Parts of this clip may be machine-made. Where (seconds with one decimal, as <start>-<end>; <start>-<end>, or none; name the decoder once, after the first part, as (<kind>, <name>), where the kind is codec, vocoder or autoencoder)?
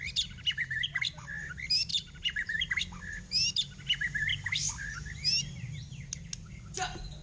1.9-2.7 (vocoder, BigVGAN v2)